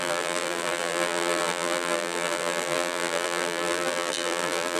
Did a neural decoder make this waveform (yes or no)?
yes